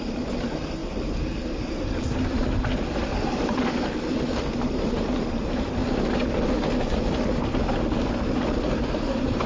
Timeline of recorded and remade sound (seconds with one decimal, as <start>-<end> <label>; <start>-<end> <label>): 0.0-3.0 remade; 3.0-4.5 recorded; 4.5-5.8 remade; 5.8-8.6 recorded; 8.6-9.5 remade